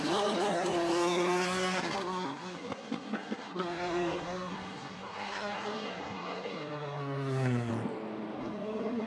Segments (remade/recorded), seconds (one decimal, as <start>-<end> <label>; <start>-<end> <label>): 0.0-7.7 remade; 7.7-8.4 recorded; 8.4-9.1 remade